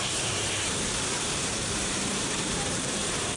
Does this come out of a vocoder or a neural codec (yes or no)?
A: yes